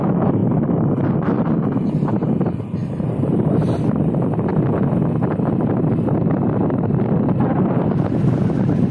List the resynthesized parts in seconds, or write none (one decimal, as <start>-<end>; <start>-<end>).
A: 2.8-4.0

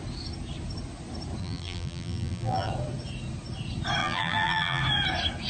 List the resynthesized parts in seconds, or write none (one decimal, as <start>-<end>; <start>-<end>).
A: 1.4-2.7; 4.0-4.8

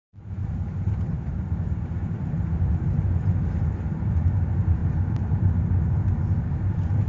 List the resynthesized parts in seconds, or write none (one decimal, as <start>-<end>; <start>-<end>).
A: 0.4-3.0; 4.8-5.5

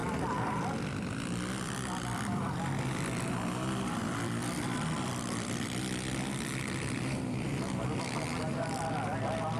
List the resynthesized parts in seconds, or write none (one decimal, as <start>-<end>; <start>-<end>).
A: 0.0-3.2; 4.0-5.8

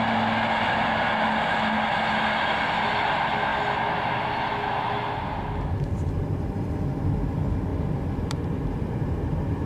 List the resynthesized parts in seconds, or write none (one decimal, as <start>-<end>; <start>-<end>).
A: 7.7-8.6

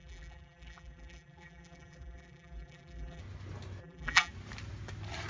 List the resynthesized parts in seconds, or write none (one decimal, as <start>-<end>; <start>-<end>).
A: 0.0-3.2; 3.8-4.3